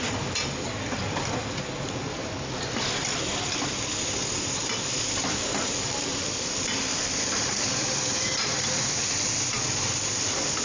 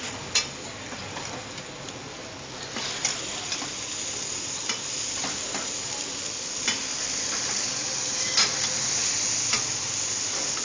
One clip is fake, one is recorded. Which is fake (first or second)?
first